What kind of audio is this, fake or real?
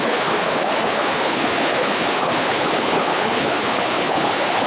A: fake